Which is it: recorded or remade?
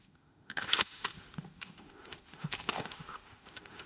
remade